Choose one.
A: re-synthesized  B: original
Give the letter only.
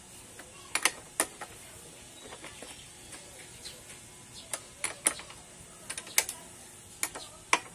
B